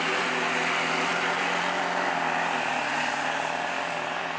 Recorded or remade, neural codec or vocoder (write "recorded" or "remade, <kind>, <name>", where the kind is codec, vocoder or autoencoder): recorded